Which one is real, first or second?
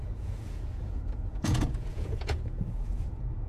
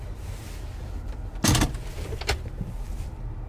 second